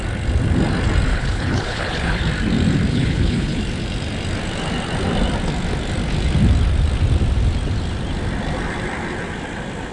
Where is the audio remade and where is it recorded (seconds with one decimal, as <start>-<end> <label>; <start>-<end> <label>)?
0.0-1.1 recorded; 1.1-2.2 remade; 2.2-2.9 recorded; 2.9-3.6 remade; 3.6-9.9 recorded